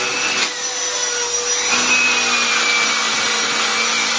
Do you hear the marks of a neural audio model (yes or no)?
no